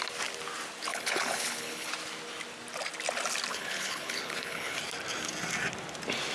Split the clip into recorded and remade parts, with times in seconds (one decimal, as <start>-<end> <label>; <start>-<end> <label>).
0.0-0.9 recorded; 0.9-1.9 remade; 1.9-3.5 recorded; 3.5-4.8 remade; 4.8-6.3 recorded